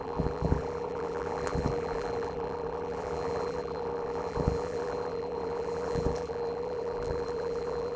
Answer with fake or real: fake